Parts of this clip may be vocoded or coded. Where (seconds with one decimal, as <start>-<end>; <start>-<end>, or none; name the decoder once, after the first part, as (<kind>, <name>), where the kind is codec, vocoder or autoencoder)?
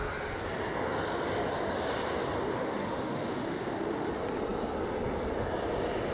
2.5-4.1 (autoencoder, DAC-VAE)